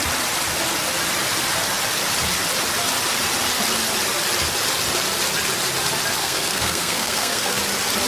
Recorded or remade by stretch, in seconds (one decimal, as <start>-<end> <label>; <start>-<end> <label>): 0.0-6.2 recorded; 6.2-7.6 remade; 7.6-8.1 recorded